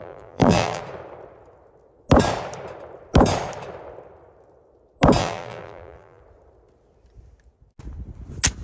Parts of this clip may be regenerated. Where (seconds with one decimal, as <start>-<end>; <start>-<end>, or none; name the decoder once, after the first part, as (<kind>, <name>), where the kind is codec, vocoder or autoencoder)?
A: 0.0-0.8 (vocoder, BigVGAN v2); 5.2-6.2

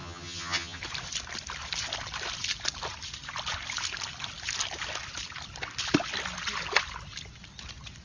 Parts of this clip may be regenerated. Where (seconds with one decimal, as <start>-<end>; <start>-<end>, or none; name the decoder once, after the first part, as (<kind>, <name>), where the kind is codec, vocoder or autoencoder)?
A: 0.0-0.8 (vocoder, HiFi-GAN)

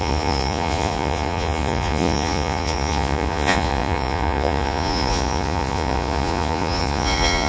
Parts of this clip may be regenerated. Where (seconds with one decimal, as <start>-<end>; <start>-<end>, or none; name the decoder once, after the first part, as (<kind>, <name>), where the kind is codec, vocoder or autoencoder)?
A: 0.0-7.5 (vocoder, Vocos)